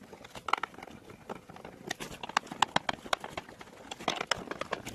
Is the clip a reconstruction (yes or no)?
no